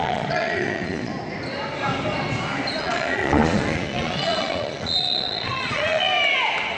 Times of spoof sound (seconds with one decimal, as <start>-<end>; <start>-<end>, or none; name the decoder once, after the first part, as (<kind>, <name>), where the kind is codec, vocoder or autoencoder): 0.0-1.1 (vocoder, Vocos); 2.8-6.1